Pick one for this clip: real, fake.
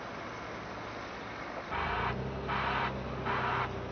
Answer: real